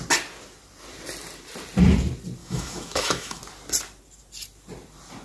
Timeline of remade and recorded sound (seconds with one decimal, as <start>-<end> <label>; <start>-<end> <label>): 0.0-2.4 recorded; 2.4-3.4 remade; 3.4-5.2 recorded